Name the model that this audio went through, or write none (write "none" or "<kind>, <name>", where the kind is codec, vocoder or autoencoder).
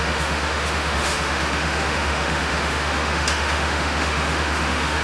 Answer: autoencoder, DAC-VAE